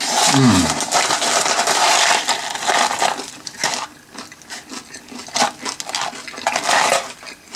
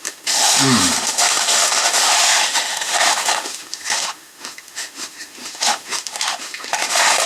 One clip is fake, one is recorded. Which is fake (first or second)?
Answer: second